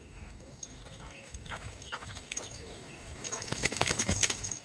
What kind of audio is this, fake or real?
fake